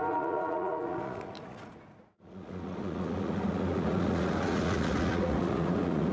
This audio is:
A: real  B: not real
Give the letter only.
B